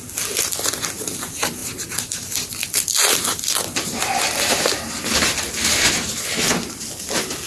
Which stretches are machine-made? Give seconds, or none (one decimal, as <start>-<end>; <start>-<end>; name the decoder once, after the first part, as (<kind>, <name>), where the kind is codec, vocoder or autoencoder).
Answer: 1.6-6.1 (vocoder, BigVGAN v2)